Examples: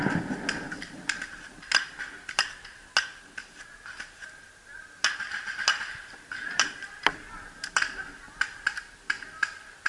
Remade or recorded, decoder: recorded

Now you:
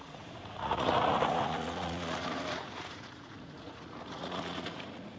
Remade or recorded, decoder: remade, vocoder, Vocos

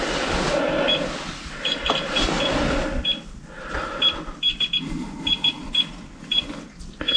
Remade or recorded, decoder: recorded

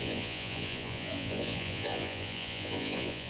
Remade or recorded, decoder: remade, vocoder, Vocos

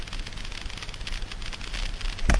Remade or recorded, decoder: recorded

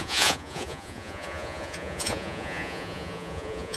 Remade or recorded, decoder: remade, vocoder, Vocos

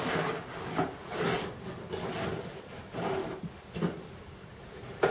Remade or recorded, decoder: recorded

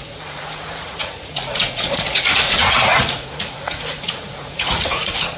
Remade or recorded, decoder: remade, vocoder, Vocos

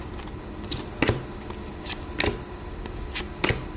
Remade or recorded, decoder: recorded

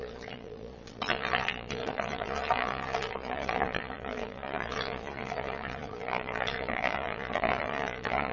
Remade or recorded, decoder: remade, vocoder, Vocos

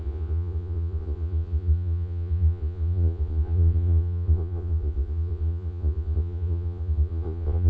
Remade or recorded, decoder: remade, vocoder, Vocos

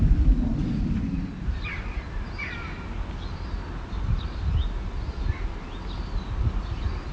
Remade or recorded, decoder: recorded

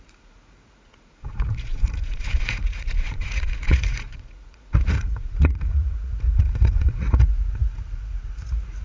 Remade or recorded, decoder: remade, vocoder, Vocos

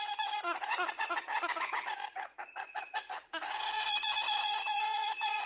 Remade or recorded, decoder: remade, vocoder, Vocos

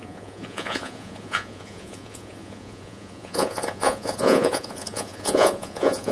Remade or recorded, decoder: remade, vocoder, Vocos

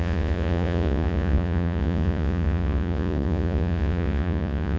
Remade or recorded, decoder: remade, vocoder, Vocos